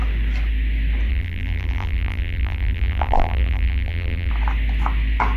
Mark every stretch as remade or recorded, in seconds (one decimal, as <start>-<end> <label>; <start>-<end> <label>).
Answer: 0.0-1.1 recorded; 1.1-4.3 remade; 4.3-5.4 recorded